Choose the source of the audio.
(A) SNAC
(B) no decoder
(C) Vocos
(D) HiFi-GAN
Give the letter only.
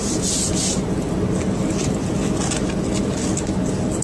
B